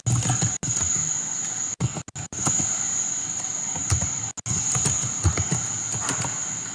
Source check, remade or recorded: recorded